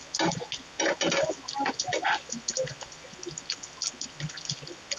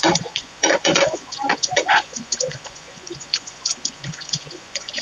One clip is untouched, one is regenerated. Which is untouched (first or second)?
first